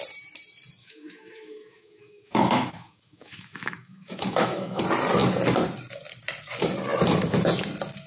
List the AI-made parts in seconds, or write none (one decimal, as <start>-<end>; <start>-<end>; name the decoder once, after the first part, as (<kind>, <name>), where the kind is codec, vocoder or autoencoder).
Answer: 0.8-4.8 (autoencoder, DAC-VAE)